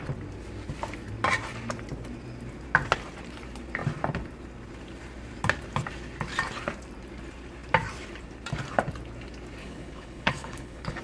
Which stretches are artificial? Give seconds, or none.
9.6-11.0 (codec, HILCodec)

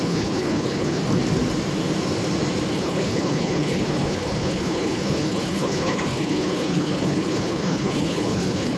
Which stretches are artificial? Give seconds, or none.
0.0-1.0 (codec, HILCodec); 2.7-8.8

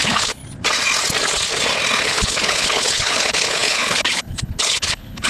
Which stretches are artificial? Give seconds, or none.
0.0-0.4 (codec, HILCodec); 2.0-5.3